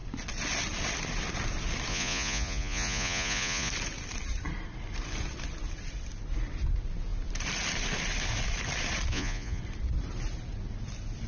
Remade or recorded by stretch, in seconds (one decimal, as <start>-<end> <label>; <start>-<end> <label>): 0.0-1.9 recorded; 1.9-3.7 remade; 3.7-9.1 recorded; 9.1-9.6 remade; 9.6-11.3 recorded